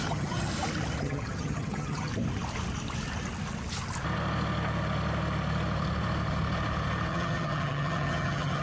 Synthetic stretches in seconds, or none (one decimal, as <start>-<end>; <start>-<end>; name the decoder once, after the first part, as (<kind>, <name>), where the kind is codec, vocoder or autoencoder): 0.0-0.5 (vocoder, HiFi-GAN); 1.0-2.1; 7.1-8.6